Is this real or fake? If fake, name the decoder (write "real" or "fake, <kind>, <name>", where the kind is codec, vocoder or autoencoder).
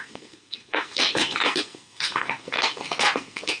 fake, codec, SNAC